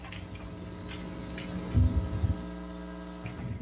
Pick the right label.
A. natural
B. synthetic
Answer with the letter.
A